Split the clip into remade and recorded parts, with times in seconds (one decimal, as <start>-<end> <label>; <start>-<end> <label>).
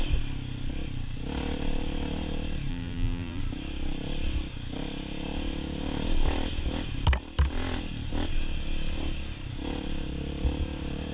0.0-2.7 recorded; 2.7-3.4 remade; 3.4-11.1 recorded